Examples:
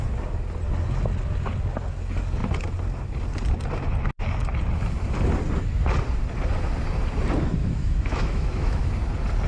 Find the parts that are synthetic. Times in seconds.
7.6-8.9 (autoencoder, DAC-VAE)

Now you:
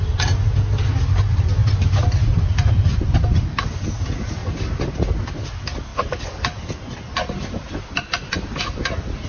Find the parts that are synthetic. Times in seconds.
none

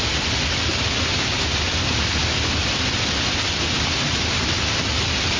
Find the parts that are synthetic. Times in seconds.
none

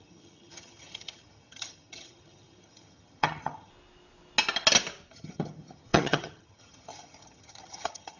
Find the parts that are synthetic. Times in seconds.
0.0-3.7 (vocoder, HiFi-GAN); 5.1-8.2

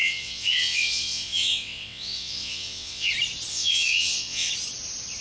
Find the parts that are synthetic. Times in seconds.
0.0-3.1 (vocoder, WaveNeXt); 3.5-4.5

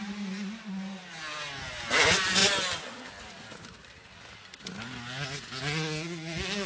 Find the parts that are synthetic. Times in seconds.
none

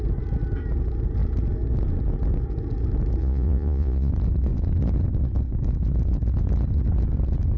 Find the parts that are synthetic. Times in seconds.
3.2-4.1 (vocoder, Vocos)